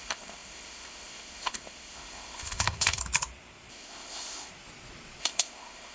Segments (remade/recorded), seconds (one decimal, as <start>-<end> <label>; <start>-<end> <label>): 0.0-3.0 remade; 3.0-3.7 recorded; 3.7-4.5 remade; 4.5-5.2 recorded; 5.2-5.9 remade